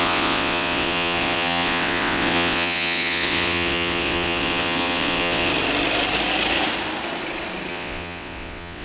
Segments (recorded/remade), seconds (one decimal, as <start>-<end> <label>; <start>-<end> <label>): 0.0-5.5 remade; 5.5-7.7 recorded; 7.7-8.8 remade